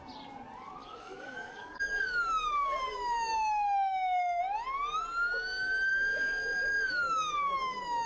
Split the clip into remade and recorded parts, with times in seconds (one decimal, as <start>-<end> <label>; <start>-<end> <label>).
0.0-0.8 recorded; 0.8-4.4 remade; 4.4-5.9 recorded; 5.9-8.1 remade